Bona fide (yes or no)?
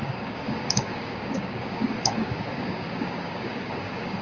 no